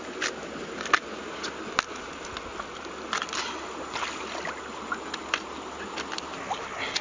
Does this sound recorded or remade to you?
recorded